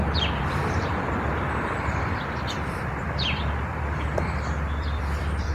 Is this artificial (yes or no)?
yes